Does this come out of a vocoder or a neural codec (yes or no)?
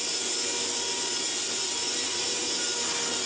no